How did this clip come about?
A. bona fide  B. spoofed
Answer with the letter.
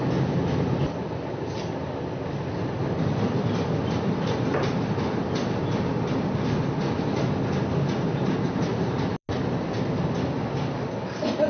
A